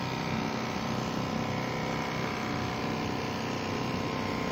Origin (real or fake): real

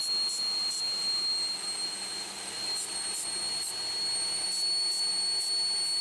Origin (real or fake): real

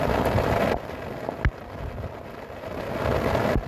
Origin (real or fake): real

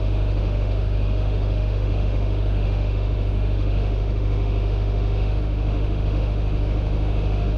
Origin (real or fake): fake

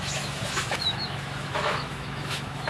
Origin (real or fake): fake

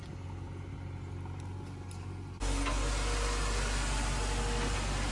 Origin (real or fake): real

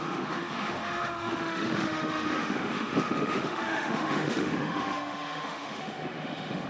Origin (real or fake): fake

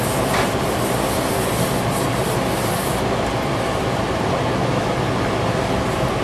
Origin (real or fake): real